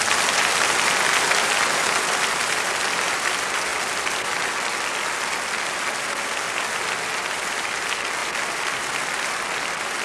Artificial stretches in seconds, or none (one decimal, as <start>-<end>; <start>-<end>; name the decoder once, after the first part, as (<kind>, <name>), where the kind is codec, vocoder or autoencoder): none